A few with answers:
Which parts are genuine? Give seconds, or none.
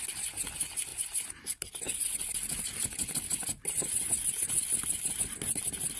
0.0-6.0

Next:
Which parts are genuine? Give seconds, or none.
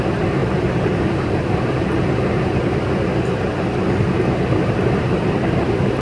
none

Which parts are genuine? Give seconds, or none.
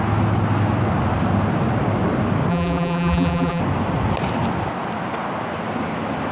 0.0-2.5; 3.6-6.3